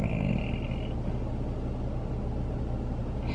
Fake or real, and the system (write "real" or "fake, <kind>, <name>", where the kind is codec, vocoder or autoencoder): real